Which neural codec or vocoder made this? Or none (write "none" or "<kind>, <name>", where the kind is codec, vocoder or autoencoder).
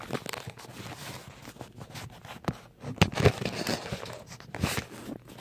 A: none